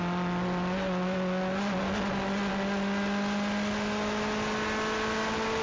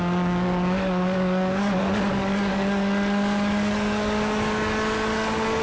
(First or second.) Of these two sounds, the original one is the first